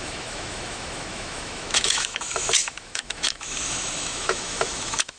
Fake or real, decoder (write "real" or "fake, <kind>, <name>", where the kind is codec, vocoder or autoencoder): fake, autoencoder, DAC-VAE